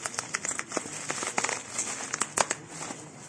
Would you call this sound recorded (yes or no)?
yes